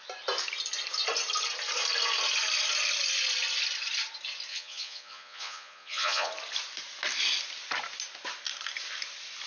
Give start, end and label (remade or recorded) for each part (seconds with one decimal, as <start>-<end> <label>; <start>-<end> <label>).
0.0-4.5 recorded; 4.5-6.3 remade; 6.3-9.5 recorded